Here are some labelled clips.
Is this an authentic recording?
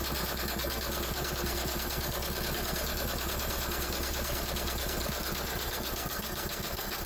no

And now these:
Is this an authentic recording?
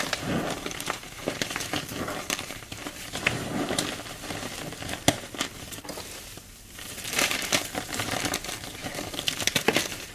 no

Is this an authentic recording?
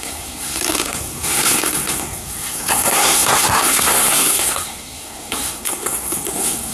no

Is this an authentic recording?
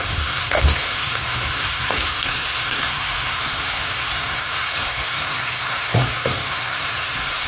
no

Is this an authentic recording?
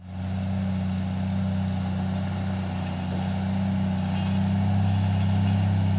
yes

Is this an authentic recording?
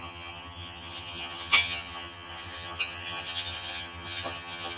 no